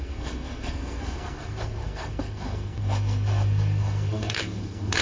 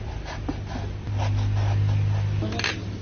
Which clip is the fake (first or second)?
first